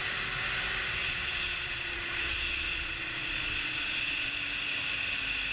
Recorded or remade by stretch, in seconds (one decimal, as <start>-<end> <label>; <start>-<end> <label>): 0.0-1.0 recorded; 1.0-4.3 remade; 4.3-5.5 recorded